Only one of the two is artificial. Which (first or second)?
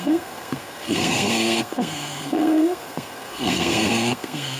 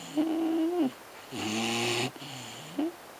first